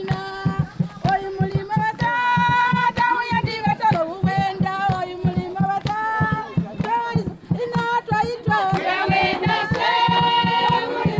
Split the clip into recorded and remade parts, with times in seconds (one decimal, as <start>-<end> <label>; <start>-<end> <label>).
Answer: 0.0-2.6 recorded; 2.6-3.9 remade; 3.9-11.2 recorded